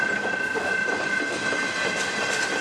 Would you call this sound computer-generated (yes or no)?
yes